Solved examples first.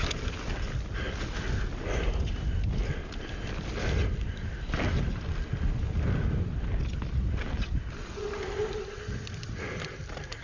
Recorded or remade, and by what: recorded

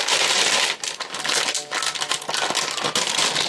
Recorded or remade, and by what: recorded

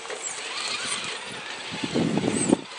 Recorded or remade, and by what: recorded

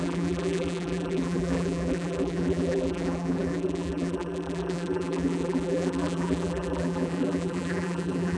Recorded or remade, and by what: remade, vocoder, BigVGAN v2